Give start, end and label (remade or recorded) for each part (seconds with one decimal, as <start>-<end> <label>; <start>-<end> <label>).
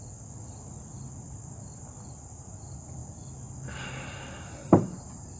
0.0-4.6 recorded; 4.6-5.4 remade